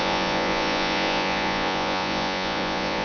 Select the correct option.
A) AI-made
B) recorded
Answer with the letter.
A